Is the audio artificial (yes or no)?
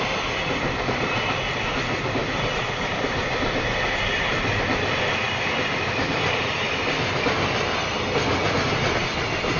no